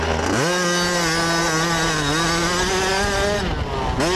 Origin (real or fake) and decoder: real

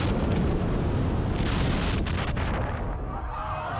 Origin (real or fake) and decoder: real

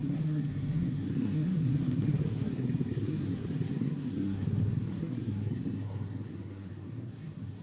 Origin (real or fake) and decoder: fake, codec, SNAC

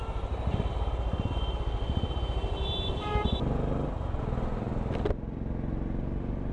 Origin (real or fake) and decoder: real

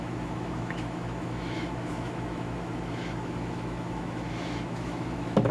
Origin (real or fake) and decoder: fake, autoencoder, DAC-VAE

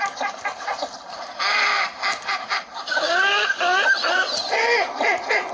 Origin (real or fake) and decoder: real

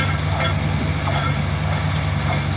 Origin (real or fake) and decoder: real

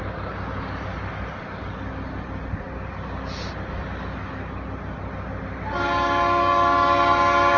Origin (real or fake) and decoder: real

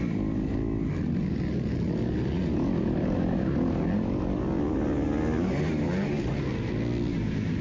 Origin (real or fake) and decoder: real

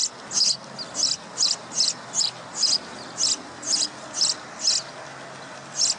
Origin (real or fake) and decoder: real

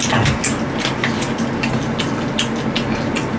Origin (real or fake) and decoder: real